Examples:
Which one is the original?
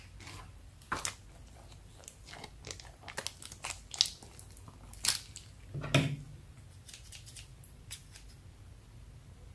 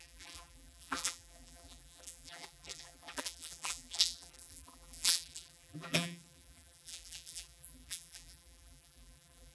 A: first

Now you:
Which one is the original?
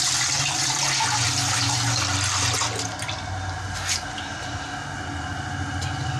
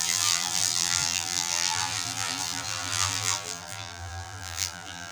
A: first